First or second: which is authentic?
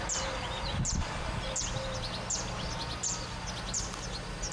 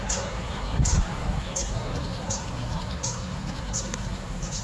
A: first